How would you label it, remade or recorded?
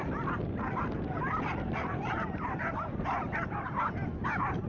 recorded